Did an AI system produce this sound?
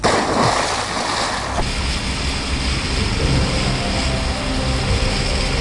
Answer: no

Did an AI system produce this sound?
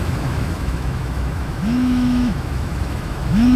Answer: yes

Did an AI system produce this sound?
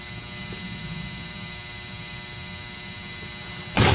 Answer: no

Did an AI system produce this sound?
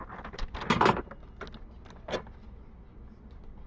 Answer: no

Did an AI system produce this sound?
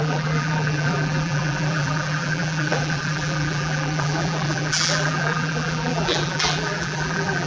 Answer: yes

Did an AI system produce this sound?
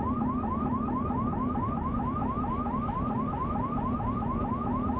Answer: no